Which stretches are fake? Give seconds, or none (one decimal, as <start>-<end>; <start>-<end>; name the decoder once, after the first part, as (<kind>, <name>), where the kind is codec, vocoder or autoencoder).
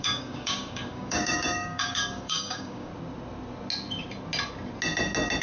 0.0-2.9 (codec, DAC)